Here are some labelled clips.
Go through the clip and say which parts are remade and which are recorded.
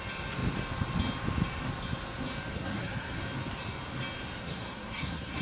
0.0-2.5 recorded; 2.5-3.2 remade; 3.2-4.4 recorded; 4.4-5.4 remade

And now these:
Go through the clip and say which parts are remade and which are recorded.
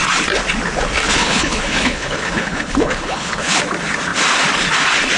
0.0-1.0 recorded; 1.0-3.6 remade; 3.6-5.2 recorded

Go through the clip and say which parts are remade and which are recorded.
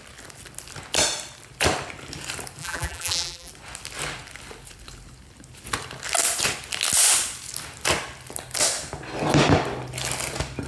0.0-2.6 recorded; 2.6-3.5 remade; 3.5-10.7 recorded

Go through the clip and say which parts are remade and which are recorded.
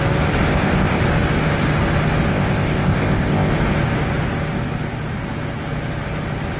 0.0-0.5 recorded; 0.5-1.0 remade; 1.0-2.3 recorded; 2.3-3.5 remade; 3.5-6.6 recorded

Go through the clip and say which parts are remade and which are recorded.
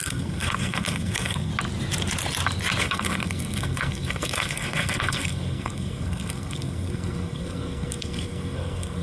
0.0-1.5 remade; 1.5-2.8 recorded; 2.8-9.0 remade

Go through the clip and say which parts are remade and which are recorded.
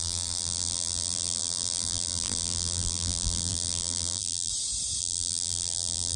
0.0-4.5 remade; 4.5-5.0 recorded; 5.0-6.2 remade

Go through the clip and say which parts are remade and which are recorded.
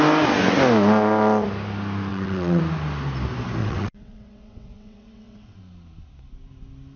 0.0-2.1 recorded; 2.1-2.6 remade; 2.6-3.6 recorded; 3.6-5.6 remade; 5.6-7.0 recorded